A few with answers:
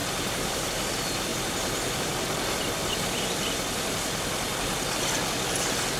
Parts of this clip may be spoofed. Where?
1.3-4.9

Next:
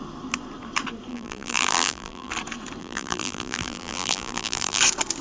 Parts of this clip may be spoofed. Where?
1.1-2.3; 2.8-4.8